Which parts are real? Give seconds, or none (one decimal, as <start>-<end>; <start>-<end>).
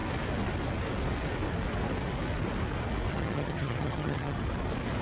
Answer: 0.0-3.1; 4.4-5.0